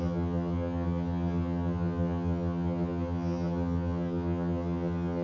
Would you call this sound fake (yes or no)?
yes